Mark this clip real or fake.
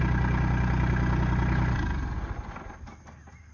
real